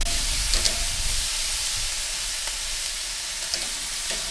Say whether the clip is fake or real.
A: real